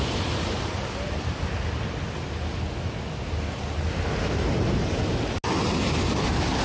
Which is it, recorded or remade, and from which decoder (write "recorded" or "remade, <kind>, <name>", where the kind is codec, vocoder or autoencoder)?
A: recorded